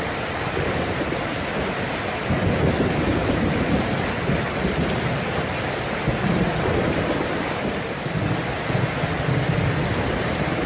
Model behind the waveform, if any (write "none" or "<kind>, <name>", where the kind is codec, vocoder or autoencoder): none